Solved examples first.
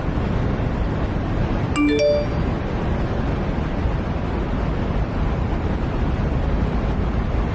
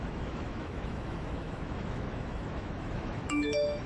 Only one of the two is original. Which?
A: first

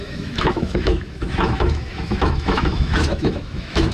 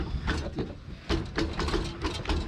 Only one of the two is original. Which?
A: second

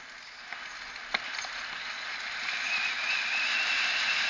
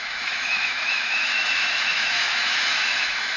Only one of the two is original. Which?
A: first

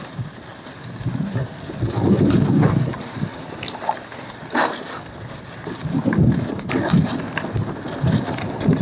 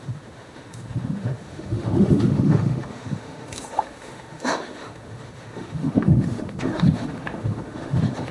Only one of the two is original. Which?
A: first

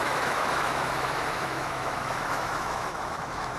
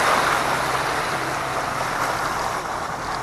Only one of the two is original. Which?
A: second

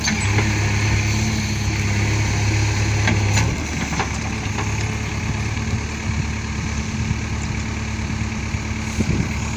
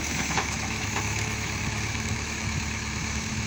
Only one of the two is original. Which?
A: first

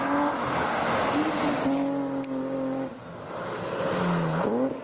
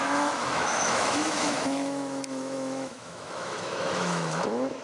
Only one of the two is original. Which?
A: first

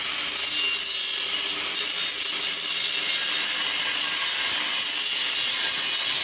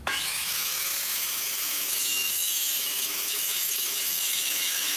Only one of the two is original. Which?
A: first